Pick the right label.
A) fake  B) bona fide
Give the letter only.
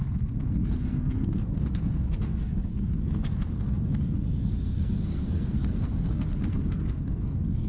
A